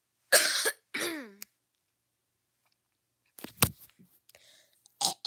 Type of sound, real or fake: real